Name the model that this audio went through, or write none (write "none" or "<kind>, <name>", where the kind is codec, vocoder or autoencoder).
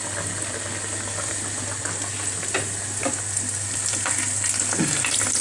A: none